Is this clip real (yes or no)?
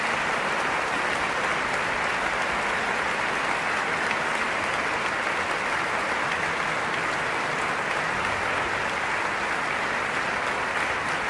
yes